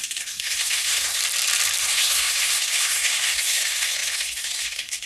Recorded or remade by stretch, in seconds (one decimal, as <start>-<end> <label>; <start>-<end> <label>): 0.0-1.2 remade; 1.2-1.8 recorded; 1.8-5.1 remade